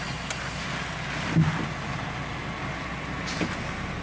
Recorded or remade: recorded